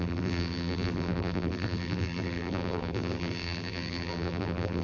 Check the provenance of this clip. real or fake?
fake